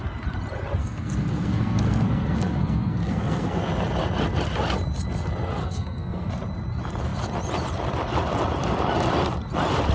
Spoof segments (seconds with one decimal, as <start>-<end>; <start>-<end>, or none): 0.8-3.6; 5.6-6.3